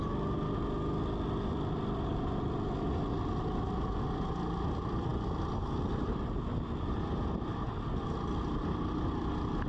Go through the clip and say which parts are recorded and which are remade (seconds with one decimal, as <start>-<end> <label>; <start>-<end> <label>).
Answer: 0.0-9.7 recorded